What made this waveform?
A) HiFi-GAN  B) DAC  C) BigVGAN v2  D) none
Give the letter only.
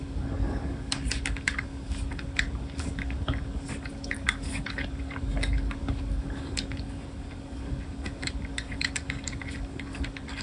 B